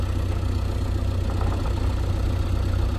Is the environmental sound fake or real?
real